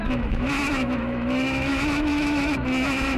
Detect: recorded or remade remade